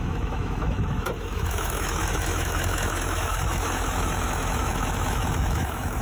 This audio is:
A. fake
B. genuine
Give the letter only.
A